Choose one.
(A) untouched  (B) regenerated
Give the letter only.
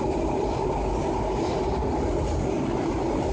A